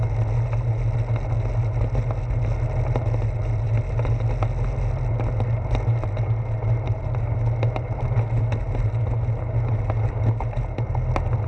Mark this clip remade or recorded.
recorded